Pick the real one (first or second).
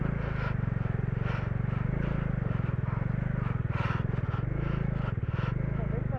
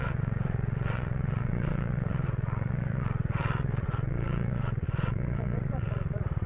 first